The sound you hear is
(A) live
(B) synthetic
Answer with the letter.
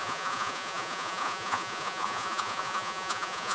B